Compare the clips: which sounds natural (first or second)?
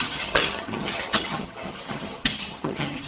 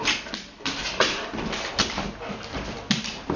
second